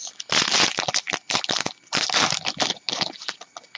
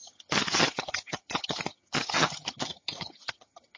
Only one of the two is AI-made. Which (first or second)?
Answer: second